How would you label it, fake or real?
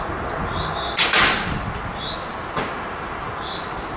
real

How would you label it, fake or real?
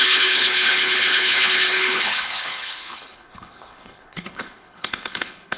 fake